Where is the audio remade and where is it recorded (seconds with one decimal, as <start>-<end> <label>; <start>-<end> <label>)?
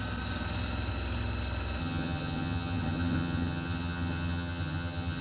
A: 0.0-1.8 recorded; 1.8-5.2 remade